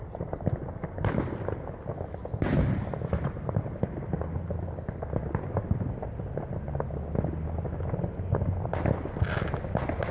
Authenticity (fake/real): real